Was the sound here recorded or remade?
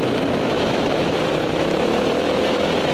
remade